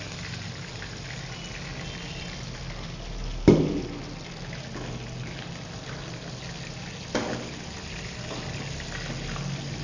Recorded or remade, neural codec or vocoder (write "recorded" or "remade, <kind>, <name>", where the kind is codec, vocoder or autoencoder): recorded